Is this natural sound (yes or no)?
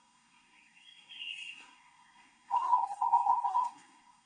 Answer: no